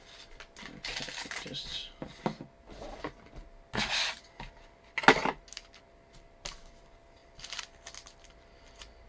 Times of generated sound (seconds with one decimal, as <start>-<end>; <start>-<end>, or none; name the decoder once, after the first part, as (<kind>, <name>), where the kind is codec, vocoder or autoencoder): 7.2-7.8 (vocoder, BigVGAN v2)